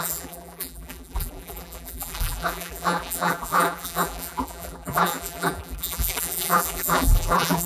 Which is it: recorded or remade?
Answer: remade